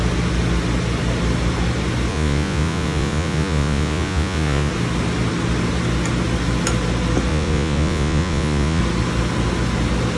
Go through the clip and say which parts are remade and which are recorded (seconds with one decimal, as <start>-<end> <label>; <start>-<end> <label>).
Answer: 0.0-2.1 recorded; 2.1-4.7 remade; 4.7-7.3 recorded; 7.3-8.8 remade; 8.8-10.2 recorded